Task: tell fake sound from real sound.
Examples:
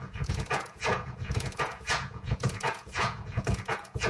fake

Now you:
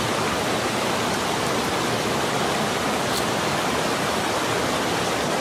real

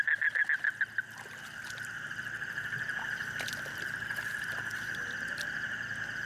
real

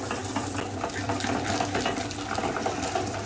real